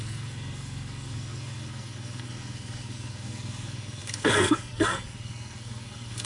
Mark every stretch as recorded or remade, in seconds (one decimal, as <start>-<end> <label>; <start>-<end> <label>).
0.0-6.3 remade